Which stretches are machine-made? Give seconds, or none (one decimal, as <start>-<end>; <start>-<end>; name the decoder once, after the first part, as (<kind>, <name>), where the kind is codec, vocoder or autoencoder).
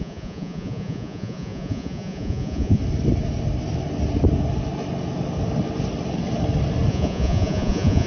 0.0-2.8 (vocoder, Vocos); 6.9-8.1